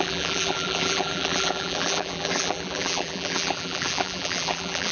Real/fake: fake